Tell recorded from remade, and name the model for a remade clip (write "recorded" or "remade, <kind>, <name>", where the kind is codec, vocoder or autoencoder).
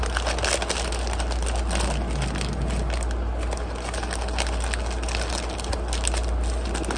recorded